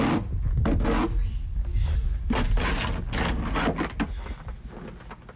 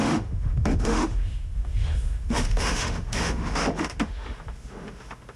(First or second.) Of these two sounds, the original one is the first